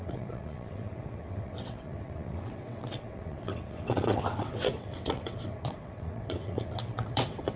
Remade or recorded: remade